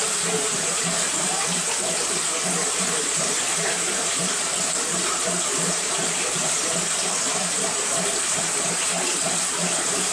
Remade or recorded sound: remade